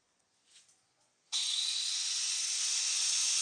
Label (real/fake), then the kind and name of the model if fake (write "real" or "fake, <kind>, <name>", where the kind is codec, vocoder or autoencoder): fake, vocoder, Vocos